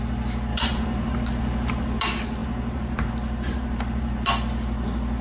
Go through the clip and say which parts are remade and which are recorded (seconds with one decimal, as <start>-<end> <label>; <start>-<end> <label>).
0.0-0.5 recorded; 0.5-2.0 remade; 2.0-2.4 recorded; 2.4-4.3 remade; 4.3-5.2 recorded